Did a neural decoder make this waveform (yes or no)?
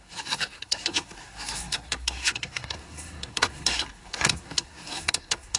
yes